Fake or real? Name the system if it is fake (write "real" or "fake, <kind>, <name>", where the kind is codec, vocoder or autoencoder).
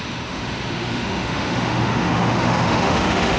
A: fake, autoencoder, DAC-VAE